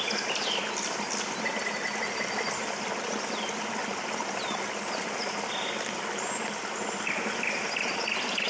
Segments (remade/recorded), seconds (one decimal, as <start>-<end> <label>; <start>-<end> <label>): 0.0-8.5 recorded